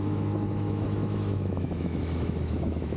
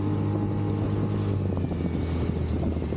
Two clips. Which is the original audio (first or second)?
second